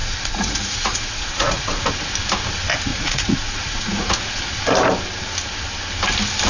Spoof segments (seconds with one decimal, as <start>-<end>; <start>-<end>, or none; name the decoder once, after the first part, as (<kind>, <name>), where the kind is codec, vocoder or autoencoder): 0.0-1.8 (vocoder, Vocos); 2.9-4.4